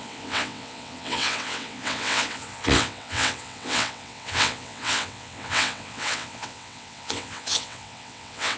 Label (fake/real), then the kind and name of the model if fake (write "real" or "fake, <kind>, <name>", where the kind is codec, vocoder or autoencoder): fake, vocoder, WaveNeXt